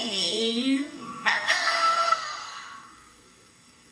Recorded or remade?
remade